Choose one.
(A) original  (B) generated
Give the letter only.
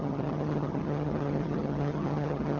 B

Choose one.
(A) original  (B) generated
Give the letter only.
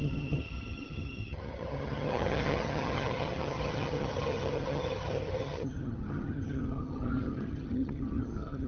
B